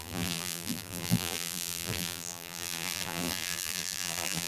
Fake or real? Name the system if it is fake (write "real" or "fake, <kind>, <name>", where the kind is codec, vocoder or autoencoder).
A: fake, vocoder, BigVGAN v2